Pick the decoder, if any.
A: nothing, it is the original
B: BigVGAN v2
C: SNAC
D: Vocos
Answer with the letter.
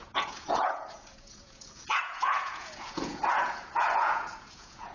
D